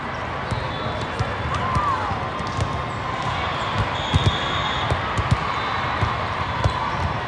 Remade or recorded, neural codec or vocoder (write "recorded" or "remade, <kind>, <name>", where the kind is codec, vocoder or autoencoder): recorded